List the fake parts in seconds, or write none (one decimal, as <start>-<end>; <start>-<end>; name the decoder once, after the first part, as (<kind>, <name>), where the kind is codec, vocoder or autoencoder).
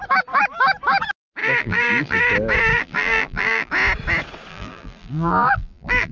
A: 1.4-2.2 (vocoder, BigVGAN v2); 2.7-3.7; 4.5-6.1